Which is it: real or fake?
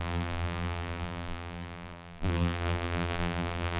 fake